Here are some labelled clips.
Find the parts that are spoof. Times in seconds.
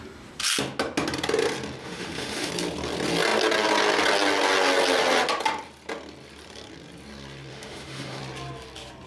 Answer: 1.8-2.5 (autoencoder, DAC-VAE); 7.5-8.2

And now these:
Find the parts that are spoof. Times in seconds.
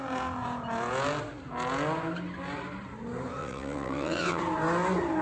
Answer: 3.4-4.4 (vocoder, WaveNeXt)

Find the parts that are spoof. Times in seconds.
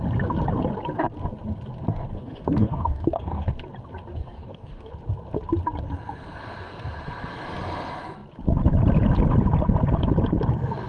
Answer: 2.1-3.5 (codec, DAC); 4.1-4.9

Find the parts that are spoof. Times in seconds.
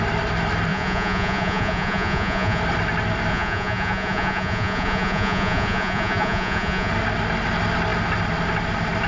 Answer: 0.7-2.6 (vocoder, Vocos); 3.3-6.9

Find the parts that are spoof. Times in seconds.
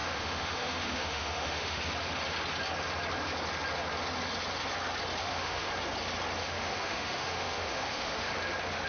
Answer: 0.0-1.8 (autoencoder, DAC-VAE); 5.2-5.7; 6.4-8.3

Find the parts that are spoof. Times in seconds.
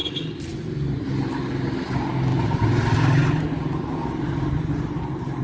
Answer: none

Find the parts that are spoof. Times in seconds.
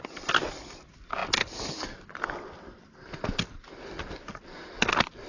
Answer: none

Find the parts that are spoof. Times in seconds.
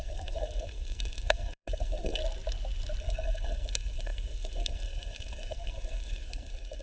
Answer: 0.0-2.2 (codec, SNAC); 3.0-6.8